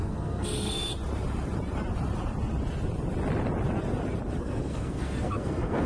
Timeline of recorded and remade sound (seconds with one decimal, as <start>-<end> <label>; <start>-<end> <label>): 0.0-0.9 remade; 0.9-4.4 recorded; 4.4-5.9 remade